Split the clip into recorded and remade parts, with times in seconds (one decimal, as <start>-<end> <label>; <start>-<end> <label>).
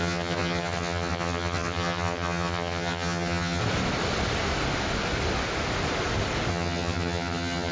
0.0-3.6 remade; 3.6-6.5 recorded; 6.5-7.7 remade